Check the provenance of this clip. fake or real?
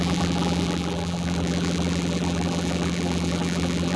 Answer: fake